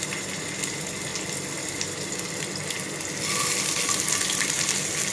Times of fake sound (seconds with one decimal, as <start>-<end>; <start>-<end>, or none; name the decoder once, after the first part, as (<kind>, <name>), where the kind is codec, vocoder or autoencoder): none